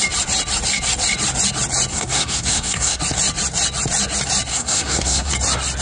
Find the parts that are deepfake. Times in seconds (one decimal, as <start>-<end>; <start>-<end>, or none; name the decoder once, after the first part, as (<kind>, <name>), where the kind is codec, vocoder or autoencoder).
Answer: 1.9-3.0 (codec, SNAC); 4.5-5.3